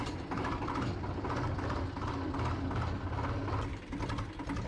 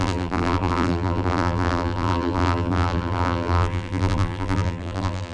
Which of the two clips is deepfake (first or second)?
second